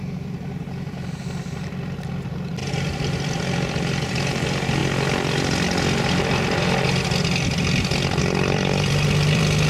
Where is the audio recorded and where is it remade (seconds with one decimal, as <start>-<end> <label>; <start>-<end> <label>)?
0.0-4.8 remade; 4.8-8.2 recorded; 8.2-9.7 remade